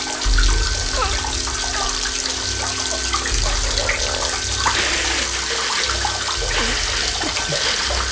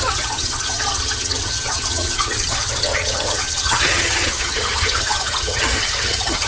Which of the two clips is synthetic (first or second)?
second